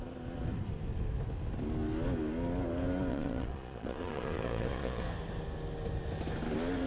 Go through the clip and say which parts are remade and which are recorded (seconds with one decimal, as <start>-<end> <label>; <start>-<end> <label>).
0.0-3.1 recorded; 3.1-5.0 remade; 5.0-6.9 recorded